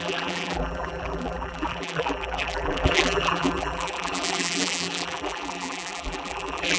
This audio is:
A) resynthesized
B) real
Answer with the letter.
A